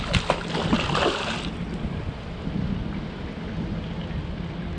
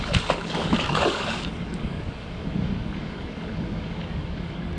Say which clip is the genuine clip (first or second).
first